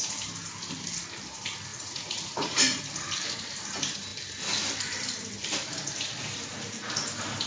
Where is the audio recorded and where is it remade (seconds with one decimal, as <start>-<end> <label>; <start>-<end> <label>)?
0.0-1.7 recorded; 1.7-2.8 remade; 2.8-7.5 recorded